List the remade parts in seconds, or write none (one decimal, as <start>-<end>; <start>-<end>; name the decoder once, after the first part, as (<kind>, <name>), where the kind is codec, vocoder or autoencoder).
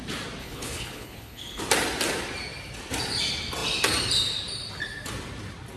0.4-1.6 (codec, HILCodec)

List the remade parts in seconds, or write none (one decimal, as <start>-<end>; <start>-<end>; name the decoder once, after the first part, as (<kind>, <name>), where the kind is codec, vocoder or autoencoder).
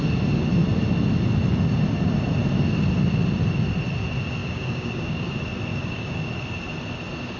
4.4-5.3 (codec, DAC); 5.7-6.3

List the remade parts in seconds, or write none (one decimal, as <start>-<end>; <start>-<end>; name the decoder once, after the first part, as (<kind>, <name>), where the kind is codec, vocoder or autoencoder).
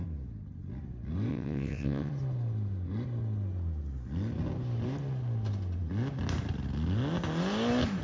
1.3-2.1 (vocoder, WaveNeXt)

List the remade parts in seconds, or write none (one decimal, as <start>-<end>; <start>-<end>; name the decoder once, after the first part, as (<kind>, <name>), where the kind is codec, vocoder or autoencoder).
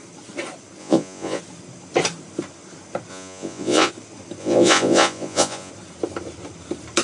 0.8-1.4 (vocoder, Vocos); 3.1-3.9; 4.4-5.7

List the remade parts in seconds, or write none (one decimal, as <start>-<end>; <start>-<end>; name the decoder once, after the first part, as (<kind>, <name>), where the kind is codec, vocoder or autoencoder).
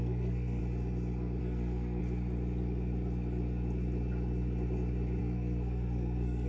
0.0-0.6 (codec, SNAC); 1.4-2.0; 5.2-6.5